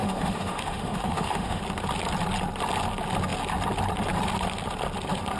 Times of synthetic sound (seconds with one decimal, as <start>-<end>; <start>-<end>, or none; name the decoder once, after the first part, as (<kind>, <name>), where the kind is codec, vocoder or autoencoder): 0.0-1.6 (autoencoder, DAC-VAE)